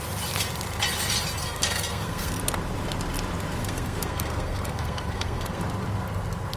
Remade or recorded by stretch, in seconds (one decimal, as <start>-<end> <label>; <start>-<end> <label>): 0.0-1.4 recorded; 1.4-2.4 remade; 2.4-3.6 recorded; 3.6-5.6 remade; 5.6-6.6 recorded